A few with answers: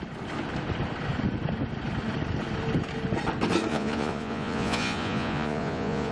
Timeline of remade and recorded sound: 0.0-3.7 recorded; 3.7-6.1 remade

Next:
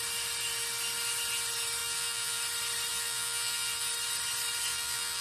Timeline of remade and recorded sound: 0.0-1.8 recorded; 1.8-2.4 remade; 2.4-2.9 recorded; 2.9-3.9 remade; 3.9-4.7 recorded; 4.7-5.2 remade

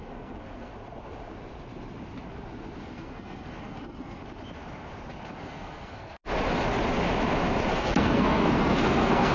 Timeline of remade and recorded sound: 0.0-0.7 remade; 0.7-2.8 recorded; 2.8-4.2 remade; 4.2-5.4 recorded; 5.4-6.2 remade; 6.2-7.7 recorded; 7.7-9.3 remade

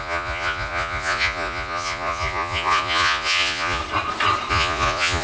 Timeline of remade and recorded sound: 0.0-3.8 remade; 3.8-4.5 recorded; 4.5-5.2 remade